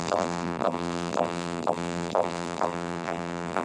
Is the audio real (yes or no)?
no